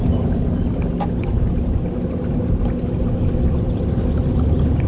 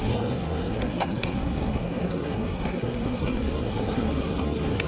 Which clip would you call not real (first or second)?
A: second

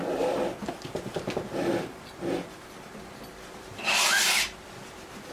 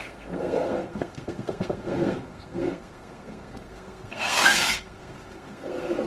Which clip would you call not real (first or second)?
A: second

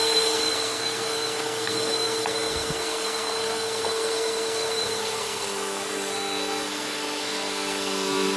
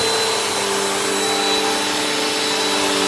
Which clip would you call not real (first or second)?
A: first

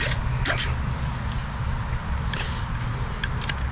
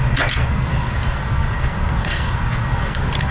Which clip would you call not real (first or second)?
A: second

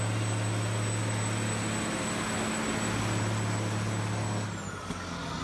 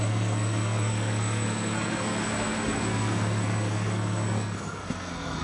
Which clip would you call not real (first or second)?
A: second